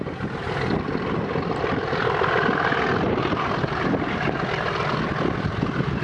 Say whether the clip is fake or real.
real